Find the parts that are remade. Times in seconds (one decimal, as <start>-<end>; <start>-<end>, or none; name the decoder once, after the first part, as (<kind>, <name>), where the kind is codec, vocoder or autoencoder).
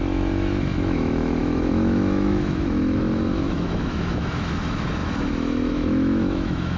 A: 0.0-6.8 (autoencoder, DAC-VAE)